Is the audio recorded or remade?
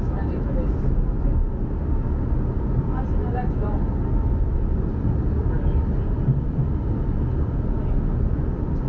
recorded